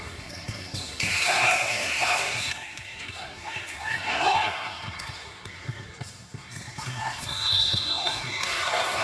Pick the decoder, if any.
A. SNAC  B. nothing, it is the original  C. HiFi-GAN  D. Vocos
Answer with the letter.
A